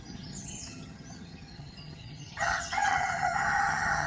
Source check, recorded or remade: remade